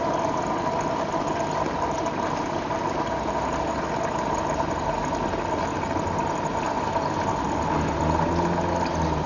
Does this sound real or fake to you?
real